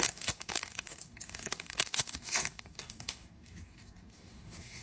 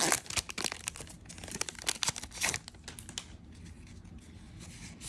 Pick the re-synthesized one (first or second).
first